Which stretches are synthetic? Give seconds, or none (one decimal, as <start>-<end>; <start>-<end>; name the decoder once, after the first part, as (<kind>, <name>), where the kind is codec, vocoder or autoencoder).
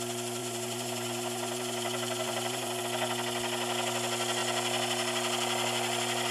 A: 0.4-2.8 (vocoder, BigVGAN v2)